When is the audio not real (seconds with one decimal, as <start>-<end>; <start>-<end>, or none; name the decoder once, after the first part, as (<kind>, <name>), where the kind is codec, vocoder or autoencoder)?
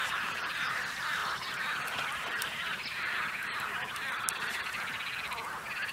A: 1.2-4.7 (vocoder, BigVGAN v2)